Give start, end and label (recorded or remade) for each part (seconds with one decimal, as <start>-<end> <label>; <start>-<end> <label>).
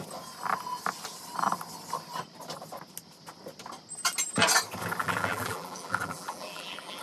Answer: 0.0-5.0 recorded; 5.0-7.0 remade